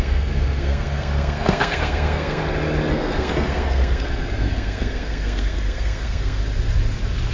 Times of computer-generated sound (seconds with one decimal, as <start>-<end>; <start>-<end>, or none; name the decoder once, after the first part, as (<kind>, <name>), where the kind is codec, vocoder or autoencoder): 0.0-2.4 (codec, SNAC); 2.9-6.4